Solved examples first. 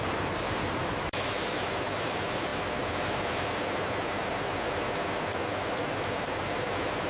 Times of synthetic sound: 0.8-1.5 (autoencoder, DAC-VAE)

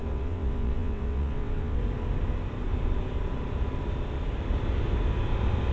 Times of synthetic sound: 0.0-1.8 (vocoder, WaveNeXt)

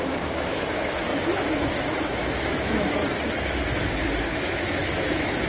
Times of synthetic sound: 0.0-3.0 (autoencoder, DAC-VAE); 4.2-5.5

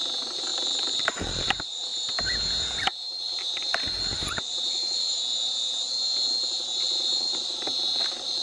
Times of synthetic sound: 0.0-1.9 (vocoder, BigVGAN v2); 2.8-5.2; 6.8-8.4